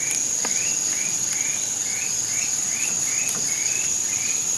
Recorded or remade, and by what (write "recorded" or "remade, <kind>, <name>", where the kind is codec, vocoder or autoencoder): recorded